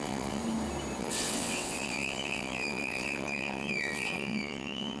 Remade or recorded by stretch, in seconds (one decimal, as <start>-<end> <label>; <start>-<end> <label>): 0.0-0.4 remade; 0.4-1.0 recorded; 1.0-5.0 remade